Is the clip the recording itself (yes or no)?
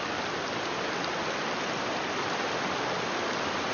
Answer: yes